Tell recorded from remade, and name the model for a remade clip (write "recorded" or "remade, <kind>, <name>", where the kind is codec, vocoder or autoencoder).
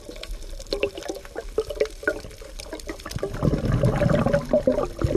recorded